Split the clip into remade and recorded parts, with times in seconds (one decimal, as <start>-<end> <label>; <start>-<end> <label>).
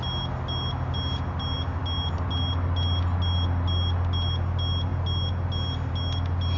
0.0-6.6 recorded